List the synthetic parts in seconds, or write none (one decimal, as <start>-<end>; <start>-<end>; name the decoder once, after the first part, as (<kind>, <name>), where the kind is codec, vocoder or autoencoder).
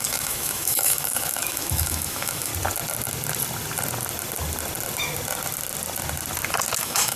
0.0-2.5 (autoencoder, DAC-VAE); 6.8-7.2